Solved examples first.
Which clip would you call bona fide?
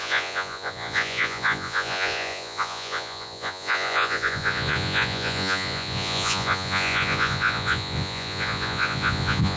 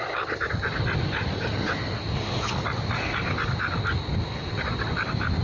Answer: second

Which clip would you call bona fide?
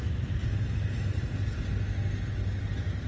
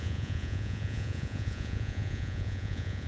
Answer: first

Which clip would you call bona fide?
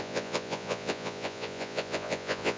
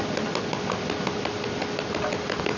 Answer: second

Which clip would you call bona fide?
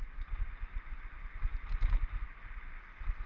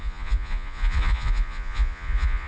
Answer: first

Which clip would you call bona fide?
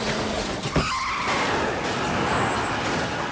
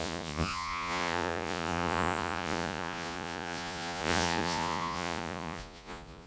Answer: first